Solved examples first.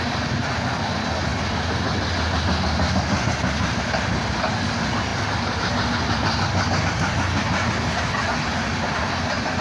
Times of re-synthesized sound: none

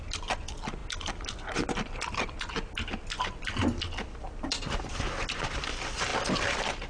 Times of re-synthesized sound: none